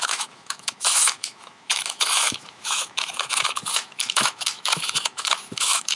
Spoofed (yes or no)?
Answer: yes